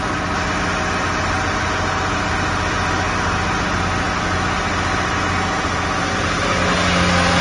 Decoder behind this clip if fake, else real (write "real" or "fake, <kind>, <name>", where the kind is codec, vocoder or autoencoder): real